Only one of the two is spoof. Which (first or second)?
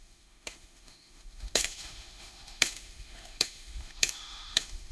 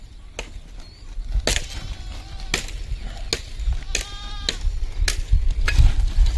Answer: first